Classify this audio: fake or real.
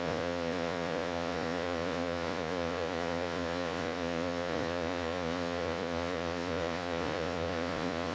fake